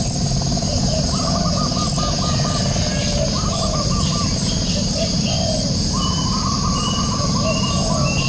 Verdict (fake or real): real